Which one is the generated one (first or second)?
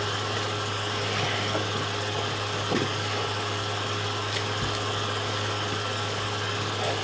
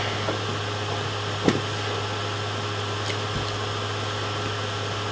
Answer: first